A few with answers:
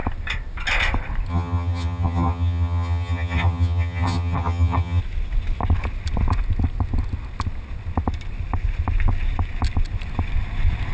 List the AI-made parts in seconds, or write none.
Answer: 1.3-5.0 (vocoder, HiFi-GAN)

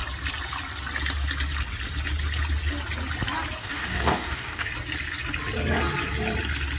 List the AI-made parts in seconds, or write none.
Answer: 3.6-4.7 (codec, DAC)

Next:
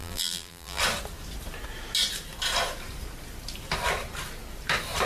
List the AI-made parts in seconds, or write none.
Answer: 0.0-0.8 (vocoder, BigVGAN v2)